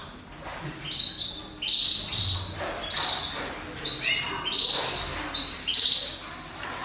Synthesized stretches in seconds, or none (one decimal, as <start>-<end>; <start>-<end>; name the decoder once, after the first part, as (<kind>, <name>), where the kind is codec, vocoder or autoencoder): 5.1-6.8 (vocoder, BigVGAN v2)